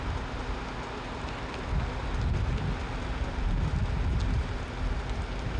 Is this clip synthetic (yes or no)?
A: no